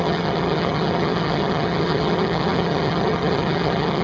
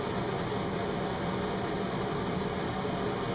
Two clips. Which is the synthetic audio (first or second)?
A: first